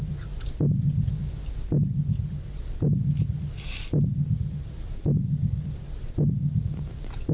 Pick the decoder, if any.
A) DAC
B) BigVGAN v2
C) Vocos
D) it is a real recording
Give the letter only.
D